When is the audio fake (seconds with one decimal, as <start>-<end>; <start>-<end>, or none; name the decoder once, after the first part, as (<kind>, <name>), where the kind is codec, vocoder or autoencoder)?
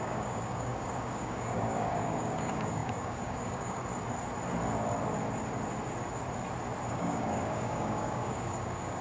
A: 0.0-3.8 (codec, DAC); 6.9-9.0